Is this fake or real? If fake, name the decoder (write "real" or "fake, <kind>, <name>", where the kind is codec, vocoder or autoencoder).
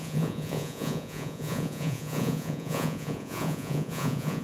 fake, vocoder, Vocos